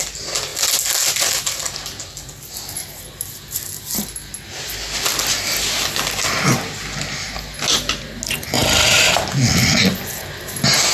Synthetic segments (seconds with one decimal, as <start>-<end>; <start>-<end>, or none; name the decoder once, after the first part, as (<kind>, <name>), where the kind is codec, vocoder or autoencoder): none